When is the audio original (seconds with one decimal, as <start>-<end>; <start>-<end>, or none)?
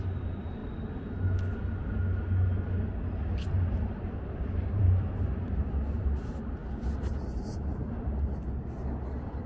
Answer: 0.6-3.0; 6.6-7.1